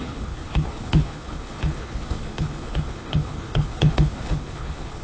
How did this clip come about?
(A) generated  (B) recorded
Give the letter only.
A